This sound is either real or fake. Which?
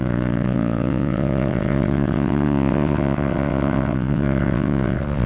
fake